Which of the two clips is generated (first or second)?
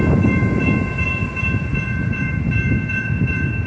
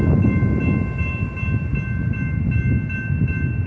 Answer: first